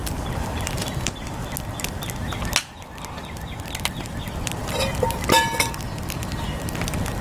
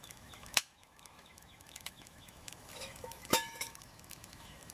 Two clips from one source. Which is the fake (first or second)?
second